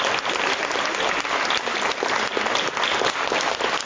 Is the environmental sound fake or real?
real